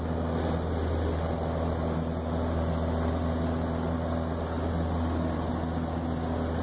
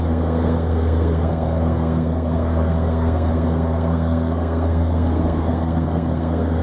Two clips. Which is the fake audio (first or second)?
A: second